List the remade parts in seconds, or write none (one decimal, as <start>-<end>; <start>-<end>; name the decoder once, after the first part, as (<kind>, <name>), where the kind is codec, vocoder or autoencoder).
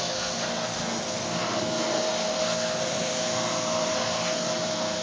0.0-5.0 (codec, SNAC)